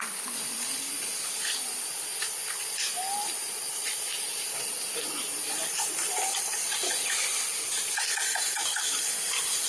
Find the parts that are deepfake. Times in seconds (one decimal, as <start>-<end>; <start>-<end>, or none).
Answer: none